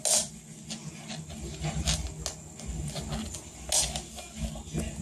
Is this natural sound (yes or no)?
yes